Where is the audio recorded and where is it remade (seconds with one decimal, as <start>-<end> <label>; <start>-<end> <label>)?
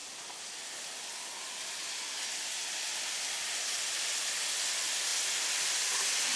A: 0.0-6.4 recorded